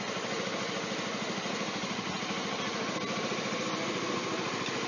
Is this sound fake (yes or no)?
no